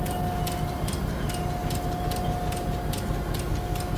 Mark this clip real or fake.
real